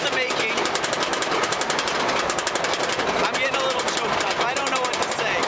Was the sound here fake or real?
real